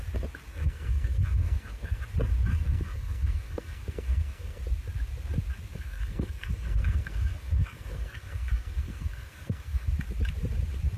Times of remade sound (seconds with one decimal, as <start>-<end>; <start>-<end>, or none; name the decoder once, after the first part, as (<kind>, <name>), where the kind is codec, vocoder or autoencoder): 0.5-2.0 (codec, SNAC); 2.5-4.6; 5.7-9.9